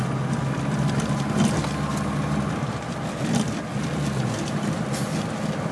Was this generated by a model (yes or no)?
no